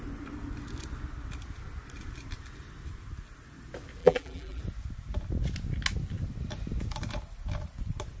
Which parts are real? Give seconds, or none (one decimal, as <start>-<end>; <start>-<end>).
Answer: 0.0-4.0; 4.6-8.2